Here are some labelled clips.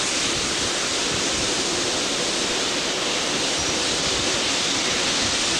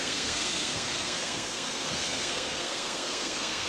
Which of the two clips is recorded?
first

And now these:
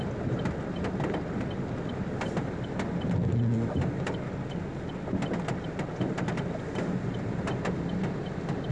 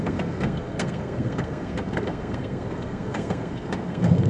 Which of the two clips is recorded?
first